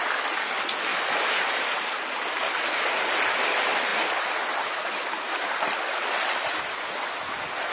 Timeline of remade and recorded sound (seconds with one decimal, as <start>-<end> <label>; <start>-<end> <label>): 0.0-0.9 recorded; 0.9-1.7 remade; 1.7-7.7 recorded